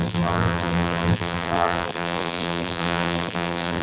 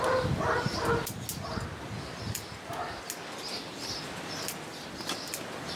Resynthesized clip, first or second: first